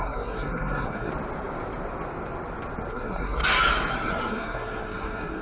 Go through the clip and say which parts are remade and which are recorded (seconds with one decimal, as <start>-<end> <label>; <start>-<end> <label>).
0.0-1.1 remade; 1.1-2.9 recorded; 2.9-3.4 remade; 3.4-3.9 recorded; 3.9-5.4 remade